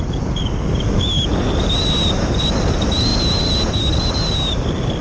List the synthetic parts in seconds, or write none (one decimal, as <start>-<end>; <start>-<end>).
none